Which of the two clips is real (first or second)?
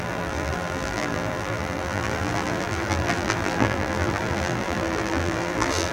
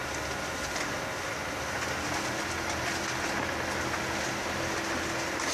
second